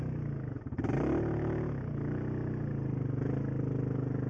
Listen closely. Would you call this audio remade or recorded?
recorded